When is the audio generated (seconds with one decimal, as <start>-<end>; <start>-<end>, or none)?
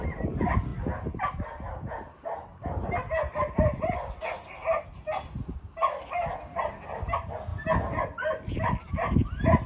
none